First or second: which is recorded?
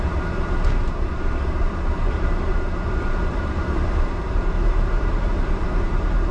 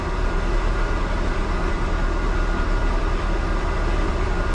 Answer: second